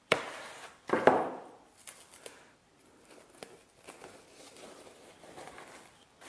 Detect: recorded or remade recorded